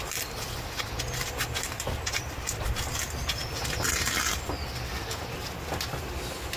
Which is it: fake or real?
real